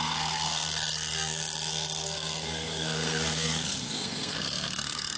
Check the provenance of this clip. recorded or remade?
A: remade